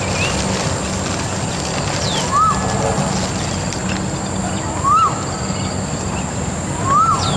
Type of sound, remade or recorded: recorded